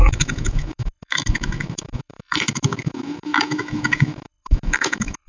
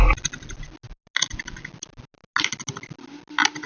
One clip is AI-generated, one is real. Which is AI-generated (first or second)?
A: first